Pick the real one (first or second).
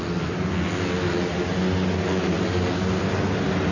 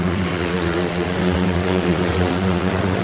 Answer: first